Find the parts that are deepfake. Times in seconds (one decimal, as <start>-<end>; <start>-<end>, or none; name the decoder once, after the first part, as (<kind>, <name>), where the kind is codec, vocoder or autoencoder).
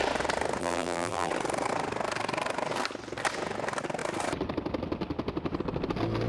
0.6-1.3 (vocoder, BigVGAN v2)